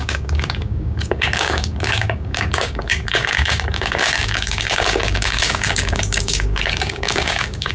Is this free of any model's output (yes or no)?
no